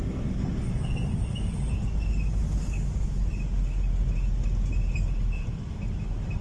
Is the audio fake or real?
real